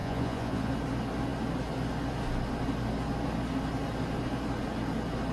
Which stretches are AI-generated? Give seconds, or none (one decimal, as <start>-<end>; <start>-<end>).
0.0-0.7